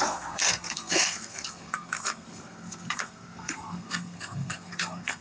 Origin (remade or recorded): remade